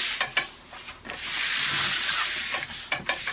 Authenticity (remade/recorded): recorded